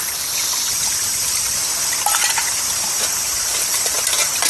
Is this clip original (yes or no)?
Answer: yes